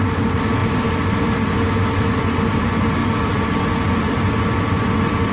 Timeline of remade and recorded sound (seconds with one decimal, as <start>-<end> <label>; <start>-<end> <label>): 0.0-0.6 recorded; 0.6-1.5 remade; 1.5-3.0 recorded; 3.0-4.4 remade; 4.4-5.3 recorded